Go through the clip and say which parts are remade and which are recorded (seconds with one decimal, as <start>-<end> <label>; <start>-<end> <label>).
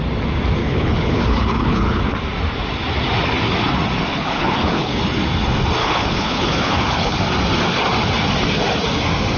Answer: 0.0-0.6 recorded; 0.6-2.0 remade; 2.0-4.1 recorded; 4.1-5.0 remade; 5.0-5.8 recorded; 5.8-7.2 remade; 7.2-9.4 recorded